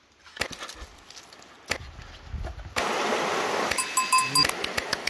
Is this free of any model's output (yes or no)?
yes